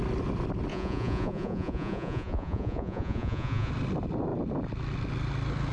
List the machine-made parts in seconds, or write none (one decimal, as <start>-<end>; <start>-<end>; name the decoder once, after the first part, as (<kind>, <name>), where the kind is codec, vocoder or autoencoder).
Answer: 0.7-3.7 (vocoder, Vocos)